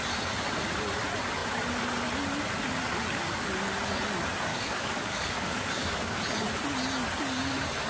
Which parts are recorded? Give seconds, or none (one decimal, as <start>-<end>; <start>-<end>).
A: 0.0-4.5; 6.2-7.9